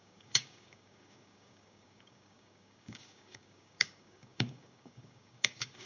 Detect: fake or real fake